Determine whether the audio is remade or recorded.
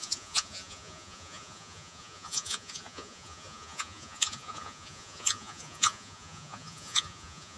remade